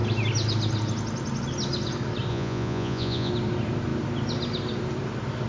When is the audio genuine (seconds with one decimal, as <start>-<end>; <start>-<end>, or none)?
0.0-2.3; 3.3-5.5